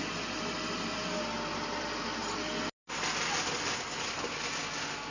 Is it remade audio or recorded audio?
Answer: recorded